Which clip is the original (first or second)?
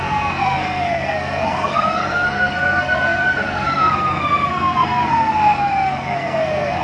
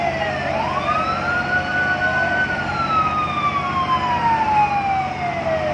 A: second